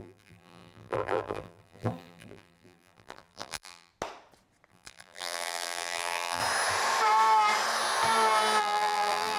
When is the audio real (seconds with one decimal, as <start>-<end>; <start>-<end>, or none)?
3.9-4.7; 6.4-8.6